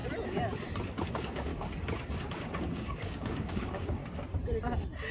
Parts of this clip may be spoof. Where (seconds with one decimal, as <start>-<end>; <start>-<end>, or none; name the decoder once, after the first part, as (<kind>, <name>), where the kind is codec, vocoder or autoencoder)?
1.1-1.5 (codec, DAC); 2.6-4.0